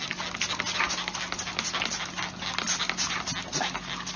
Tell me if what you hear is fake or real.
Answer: real